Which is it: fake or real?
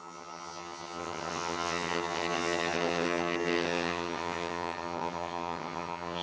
fake